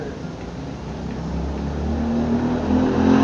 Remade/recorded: recorded